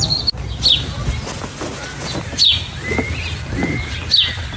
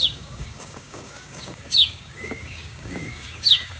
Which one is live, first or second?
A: first